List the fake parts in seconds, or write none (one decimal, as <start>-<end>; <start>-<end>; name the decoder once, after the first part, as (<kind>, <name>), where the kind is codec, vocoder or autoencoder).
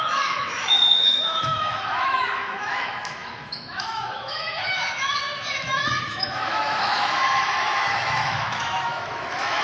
0.0-9.6 (autoencoder, DAC-VAE)